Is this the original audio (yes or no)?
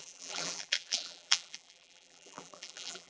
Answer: no